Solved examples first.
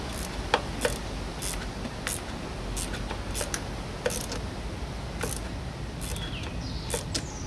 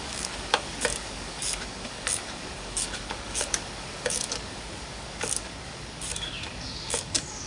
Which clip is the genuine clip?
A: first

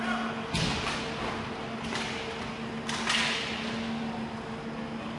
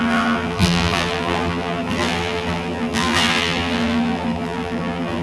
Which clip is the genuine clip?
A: first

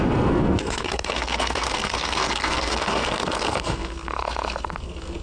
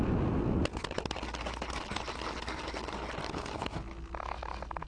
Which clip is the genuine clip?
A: second